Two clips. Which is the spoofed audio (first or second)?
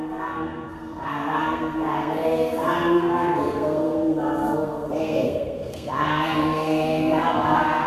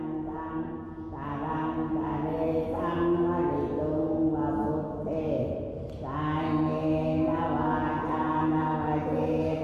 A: first